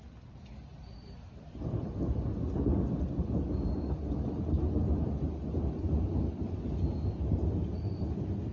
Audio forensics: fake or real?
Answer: real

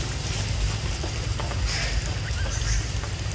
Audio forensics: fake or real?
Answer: real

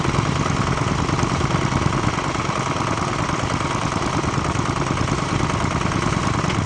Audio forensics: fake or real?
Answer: real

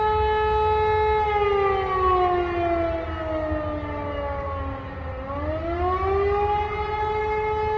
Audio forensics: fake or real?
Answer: real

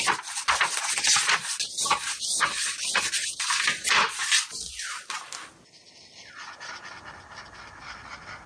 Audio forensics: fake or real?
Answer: real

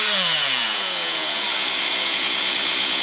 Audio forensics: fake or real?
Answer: fake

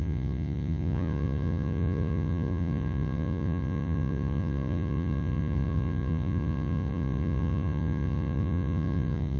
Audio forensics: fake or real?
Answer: fake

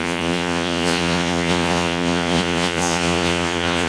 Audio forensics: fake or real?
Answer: fake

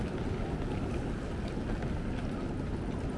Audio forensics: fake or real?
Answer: real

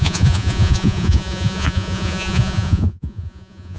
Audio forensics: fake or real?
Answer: fake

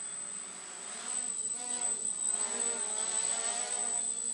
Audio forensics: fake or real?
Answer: real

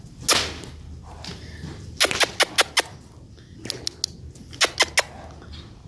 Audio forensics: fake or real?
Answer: real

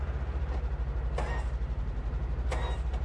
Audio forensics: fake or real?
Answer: real